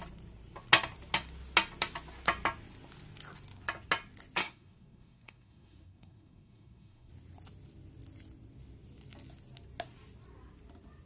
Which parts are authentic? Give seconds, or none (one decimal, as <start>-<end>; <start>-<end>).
0.0-4.4; 7.1-11.1